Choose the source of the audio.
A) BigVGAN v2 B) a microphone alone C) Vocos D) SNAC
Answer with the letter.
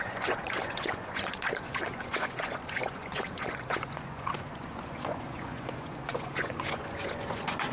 C